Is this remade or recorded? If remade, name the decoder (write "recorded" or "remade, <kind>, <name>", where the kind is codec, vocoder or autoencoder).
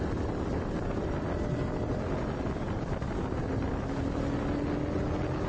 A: recorded